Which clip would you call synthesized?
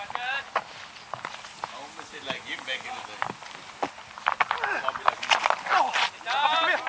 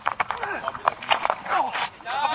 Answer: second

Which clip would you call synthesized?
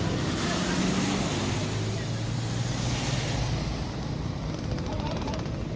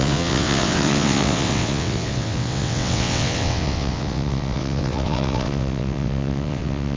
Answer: second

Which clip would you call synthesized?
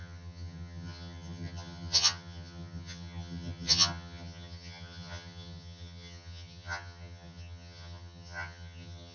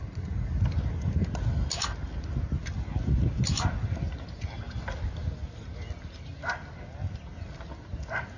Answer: first